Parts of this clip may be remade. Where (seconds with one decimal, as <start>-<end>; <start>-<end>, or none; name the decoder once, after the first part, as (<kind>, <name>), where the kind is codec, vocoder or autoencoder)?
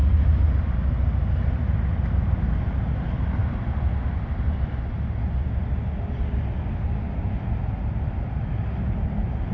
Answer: none